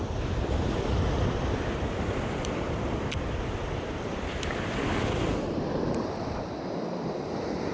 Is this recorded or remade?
remade